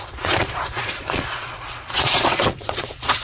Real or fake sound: fake